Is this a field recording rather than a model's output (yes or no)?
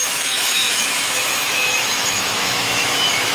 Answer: no